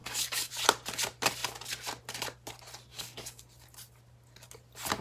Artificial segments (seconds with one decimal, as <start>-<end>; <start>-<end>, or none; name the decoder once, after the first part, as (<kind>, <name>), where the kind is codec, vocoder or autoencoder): 0.0-0.5 (codec, DAC); 2.9-3.4